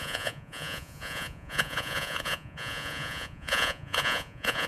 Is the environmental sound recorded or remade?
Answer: remade